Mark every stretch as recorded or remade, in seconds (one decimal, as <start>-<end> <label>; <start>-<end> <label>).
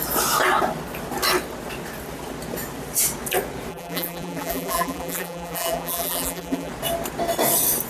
0.0-3.7 recorded; 3.7-6.7 remade; 6.7-7.9 recorded